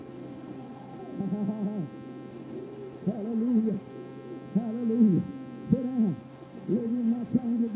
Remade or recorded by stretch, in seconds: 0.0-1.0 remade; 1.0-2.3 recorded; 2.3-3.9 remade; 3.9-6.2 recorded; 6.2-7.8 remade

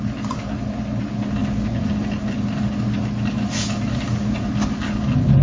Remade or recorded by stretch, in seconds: 0.0-5.4 recorded

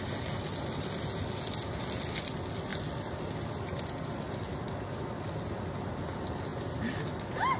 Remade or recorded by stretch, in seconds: 0.0-7.6 recorded

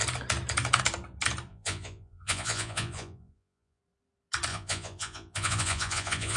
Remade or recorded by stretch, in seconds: 0.0-1.5 recorded; 1.5-3.8 remade; 3.8-4.5 recorded; 4.5-6.4 remade